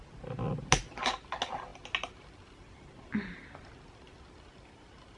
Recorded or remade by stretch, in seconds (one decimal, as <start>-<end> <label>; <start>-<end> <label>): 0.0-5.2 recorded